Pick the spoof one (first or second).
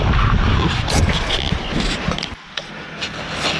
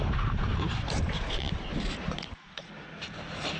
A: second